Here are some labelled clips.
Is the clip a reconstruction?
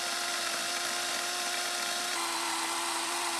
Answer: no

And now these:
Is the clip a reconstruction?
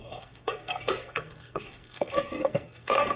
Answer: yes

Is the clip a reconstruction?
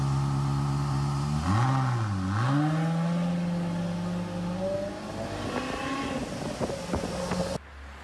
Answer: no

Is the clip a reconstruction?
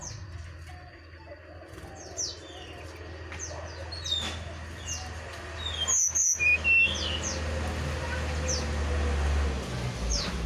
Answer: no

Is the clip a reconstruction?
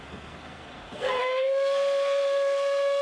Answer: yes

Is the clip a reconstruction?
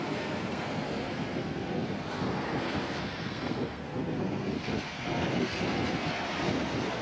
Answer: yes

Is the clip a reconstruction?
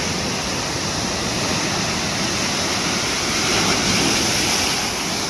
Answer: no